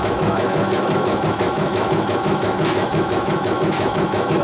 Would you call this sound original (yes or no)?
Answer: no